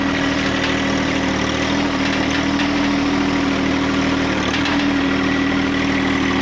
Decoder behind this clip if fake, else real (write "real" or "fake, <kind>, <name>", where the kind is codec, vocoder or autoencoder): real